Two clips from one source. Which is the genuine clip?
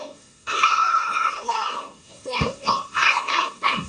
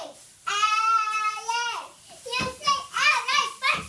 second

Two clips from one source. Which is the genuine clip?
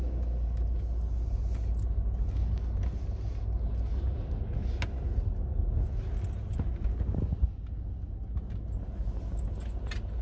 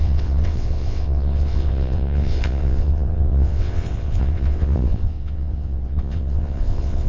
first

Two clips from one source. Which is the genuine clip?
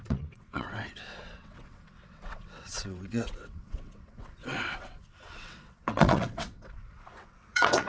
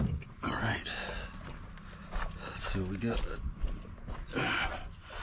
second